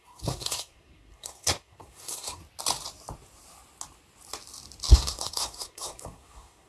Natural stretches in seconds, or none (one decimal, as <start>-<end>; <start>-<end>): 2.4-4.9